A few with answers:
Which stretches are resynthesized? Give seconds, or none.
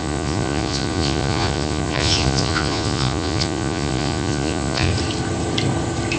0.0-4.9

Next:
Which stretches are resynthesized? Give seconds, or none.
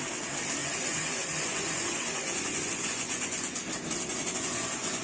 0.6-3.6; 4.1-5.0